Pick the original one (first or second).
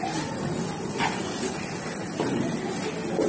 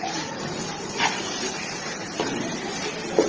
first